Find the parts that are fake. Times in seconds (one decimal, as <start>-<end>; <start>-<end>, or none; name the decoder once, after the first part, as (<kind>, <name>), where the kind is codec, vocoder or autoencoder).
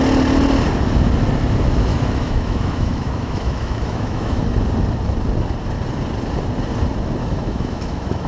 1.9-4.4 (autoencoder, DAC-VAE); 7.2-8.3